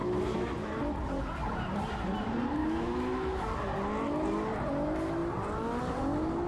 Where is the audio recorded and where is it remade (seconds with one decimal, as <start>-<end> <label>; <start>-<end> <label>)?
0.0-0.7 remade; 0.7-2.6 recorded; 2.6-3.4 remade; 3.4-6.5 recorded